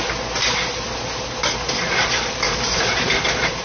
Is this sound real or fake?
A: real